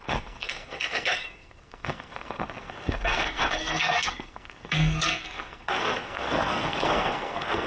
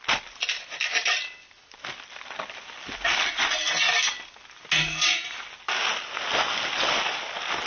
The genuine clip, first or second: second